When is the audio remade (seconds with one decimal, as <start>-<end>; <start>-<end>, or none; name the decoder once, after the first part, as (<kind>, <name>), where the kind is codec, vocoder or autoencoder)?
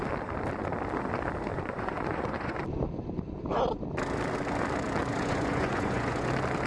1.5-2.7 (vocoder, Vocos); 5.1-6.3